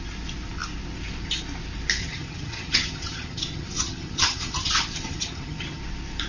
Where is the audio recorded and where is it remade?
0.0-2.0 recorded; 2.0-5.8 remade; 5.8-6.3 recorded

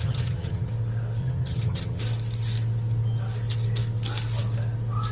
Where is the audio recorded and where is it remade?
0.0-0.7 remade; 0.7-1.2 recorded; 1.2-2.0 remade; 2.0-5.1 recorded

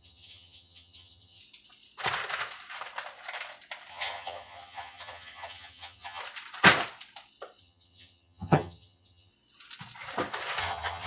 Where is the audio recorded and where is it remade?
0.0-1.4 remade; 1.4-3.9 recorded; 3.9-6.2 remade; 6.2-7.6 recorded; 7.6-9.3 remade; 9.3-10.6 recorded; 10.6-11.1 remade

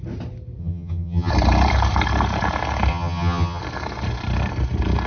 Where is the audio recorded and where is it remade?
0.0-0.6 recorded; 0.6-1.3 remade; 1.3-2.9 recorded; 2.9-3.6 remade; 3.6-5.1 recorded

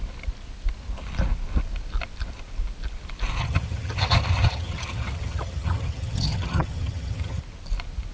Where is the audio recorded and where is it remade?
0.0-3.4 recorded; 3.4-7.4 remade; 7.4-8.1 recorded